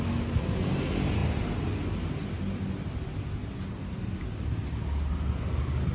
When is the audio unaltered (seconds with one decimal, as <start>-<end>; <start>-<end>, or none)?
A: 0.0-5.9